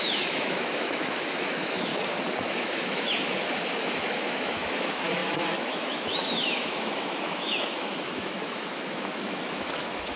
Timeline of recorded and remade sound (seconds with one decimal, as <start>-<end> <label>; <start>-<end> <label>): 0.0-1.9 remade; 1.9-2.4 recorded; 2.4-10.2 remade